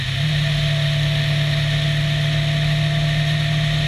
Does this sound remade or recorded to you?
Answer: recorded